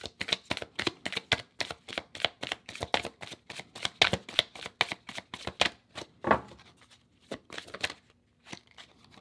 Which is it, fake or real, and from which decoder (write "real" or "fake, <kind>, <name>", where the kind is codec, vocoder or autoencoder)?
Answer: real